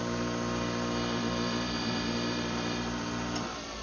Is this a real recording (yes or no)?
no